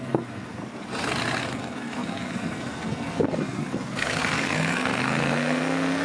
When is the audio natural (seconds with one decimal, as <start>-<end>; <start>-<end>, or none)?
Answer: 0.6-1.4